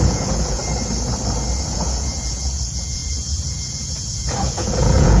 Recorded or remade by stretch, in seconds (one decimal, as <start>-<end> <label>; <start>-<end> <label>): 0.0-0.6 remade; 0.6-1.6 recorded; 1.6-5.2 remade